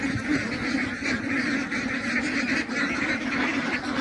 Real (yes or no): yes